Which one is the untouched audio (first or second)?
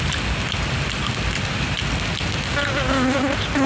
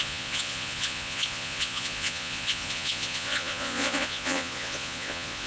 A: first